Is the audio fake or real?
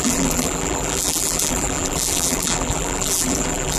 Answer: fake